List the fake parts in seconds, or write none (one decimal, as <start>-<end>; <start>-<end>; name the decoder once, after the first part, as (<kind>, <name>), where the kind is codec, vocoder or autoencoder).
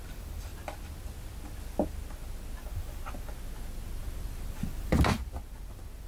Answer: none